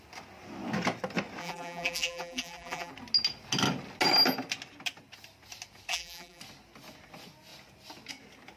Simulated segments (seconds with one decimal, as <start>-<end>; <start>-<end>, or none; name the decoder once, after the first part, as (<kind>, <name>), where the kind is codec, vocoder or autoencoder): 1.4-2.9 (vocoder, BigVGAN v2); 5.9-6.4

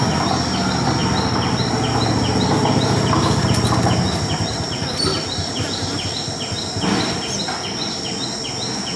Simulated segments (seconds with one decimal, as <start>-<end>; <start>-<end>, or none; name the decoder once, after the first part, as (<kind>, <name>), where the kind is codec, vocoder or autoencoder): none

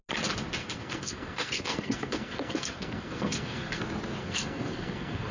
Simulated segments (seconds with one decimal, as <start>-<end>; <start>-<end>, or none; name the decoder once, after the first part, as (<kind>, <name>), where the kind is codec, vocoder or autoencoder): 0.6-3.8 (codec, SNAC); 4.2-5.3

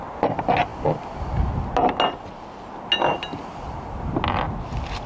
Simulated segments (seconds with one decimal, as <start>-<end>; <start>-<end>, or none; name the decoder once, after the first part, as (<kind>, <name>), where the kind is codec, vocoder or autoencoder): none

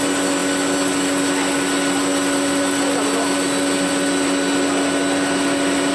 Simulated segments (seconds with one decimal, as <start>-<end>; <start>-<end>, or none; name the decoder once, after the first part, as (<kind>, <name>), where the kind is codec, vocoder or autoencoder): none